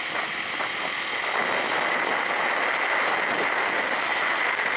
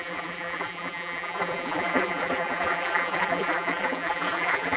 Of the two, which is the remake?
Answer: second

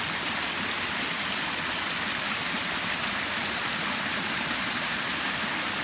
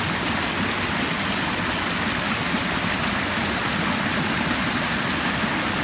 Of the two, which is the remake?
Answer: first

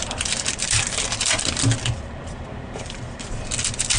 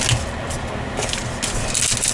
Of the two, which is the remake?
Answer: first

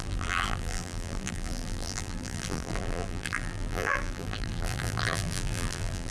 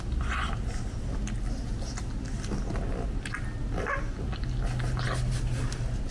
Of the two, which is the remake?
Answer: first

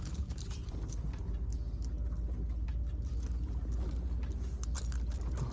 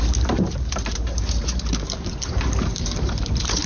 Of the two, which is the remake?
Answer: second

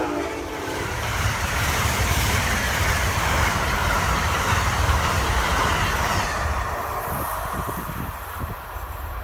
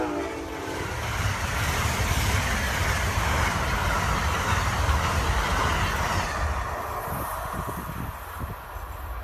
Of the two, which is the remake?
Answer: first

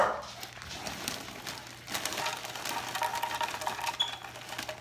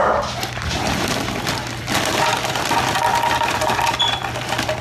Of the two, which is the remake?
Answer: second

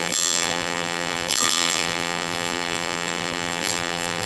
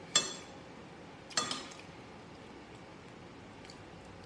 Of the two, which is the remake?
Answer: first